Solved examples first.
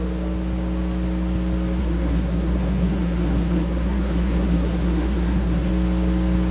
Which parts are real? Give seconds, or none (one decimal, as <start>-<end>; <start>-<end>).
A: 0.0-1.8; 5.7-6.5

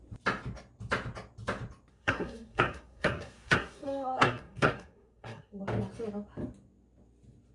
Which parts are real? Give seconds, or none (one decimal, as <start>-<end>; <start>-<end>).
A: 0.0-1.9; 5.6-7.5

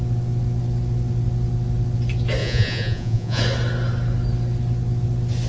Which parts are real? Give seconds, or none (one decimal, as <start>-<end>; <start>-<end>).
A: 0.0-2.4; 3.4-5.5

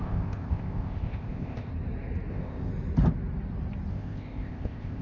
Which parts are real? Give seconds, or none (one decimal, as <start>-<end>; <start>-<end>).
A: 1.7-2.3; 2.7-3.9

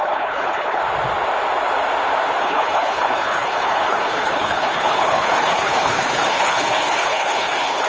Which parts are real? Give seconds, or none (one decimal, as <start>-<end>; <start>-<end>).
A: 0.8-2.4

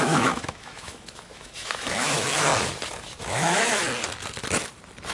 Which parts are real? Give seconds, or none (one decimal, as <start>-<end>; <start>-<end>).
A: 2.5-3.2; 3.8-5.1

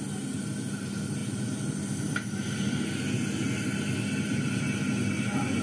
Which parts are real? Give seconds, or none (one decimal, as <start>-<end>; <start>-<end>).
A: 0.0-5.6

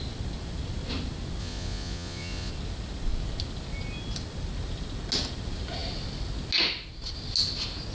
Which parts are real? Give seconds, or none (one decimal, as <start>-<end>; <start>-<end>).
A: 0.0-1.4; 2.5-7.9